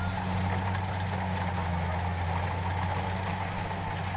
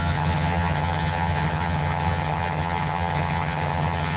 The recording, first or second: first